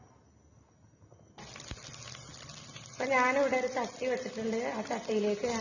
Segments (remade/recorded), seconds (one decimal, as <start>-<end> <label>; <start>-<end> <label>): 0.0-5.6 recorded